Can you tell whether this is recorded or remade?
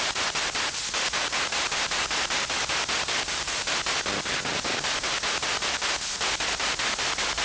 recorded